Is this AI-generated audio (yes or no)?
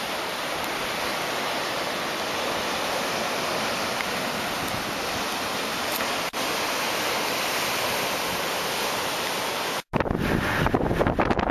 no